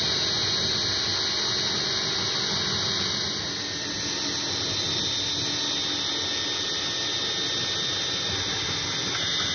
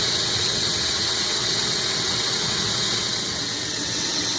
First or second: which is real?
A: first